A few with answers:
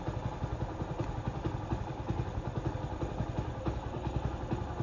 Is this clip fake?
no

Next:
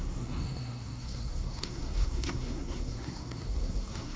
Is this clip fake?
yes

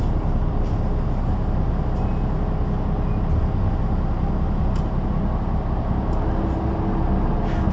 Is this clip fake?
no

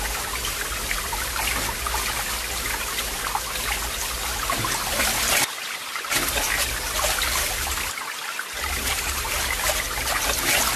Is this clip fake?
no